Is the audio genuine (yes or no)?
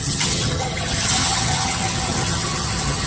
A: no